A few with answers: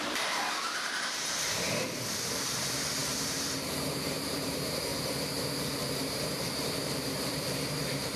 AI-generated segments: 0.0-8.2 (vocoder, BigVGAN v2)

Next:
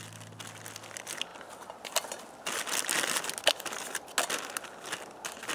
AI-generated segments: none

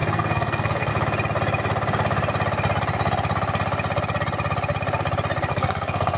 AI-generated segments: 0.0-0.9 (codec, SNAC); 5.5-6.2

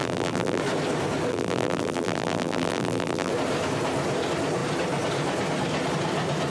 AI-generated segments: 0.0-0.6 (vocoder, BigVGAN v2); 1.3-3.3